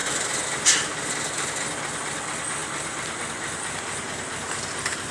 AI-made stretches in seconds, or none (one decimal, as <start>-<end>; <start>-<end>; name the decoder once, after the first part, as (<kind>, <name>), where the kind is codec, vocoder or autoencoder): none